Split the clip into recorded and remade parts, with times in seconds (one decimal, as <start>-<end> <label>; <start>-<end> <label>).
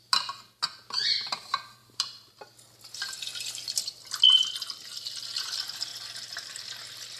0.0-7.2 recorded